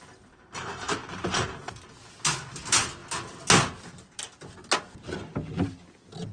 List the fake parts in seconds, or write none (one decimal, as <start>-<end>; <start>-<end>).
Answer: none